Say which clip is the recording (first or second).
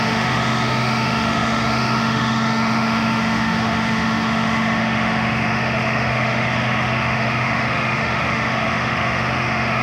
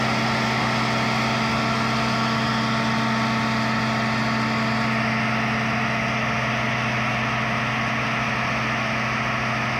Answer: second